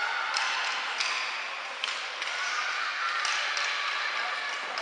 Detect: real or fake real